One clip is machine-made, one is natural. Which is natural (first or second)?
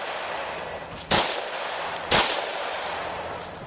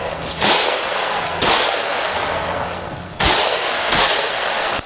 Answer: first